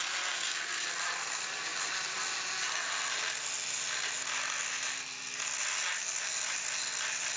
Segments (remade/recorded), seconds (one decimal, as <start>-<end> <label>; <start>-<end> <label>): 0.0-7.4 recorded